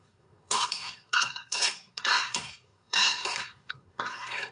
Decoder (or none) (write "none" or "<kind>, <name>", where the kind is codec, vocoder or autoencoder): codec, SNAC